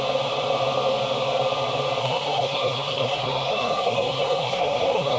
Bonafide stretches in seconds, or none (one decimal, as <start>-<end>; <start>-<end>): 0.0-2.0